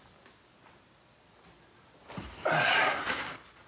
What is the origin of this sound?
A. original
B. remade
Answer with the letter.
A